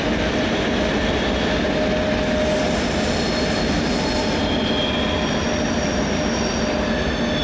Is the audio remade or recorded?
recorded